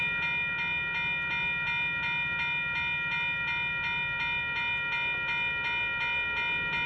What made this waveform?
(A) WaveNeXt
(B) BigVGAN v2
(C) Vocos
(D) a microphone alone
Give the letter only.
D